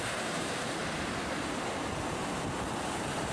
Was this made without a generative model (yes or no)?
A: no